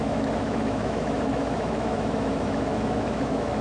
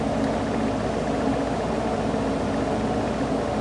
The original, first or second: second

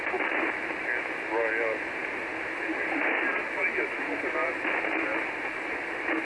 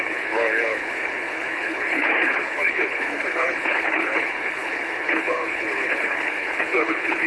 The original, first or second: first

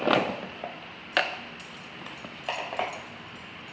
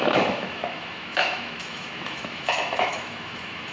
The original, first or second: first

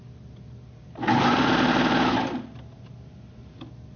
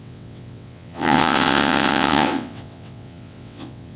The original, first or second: first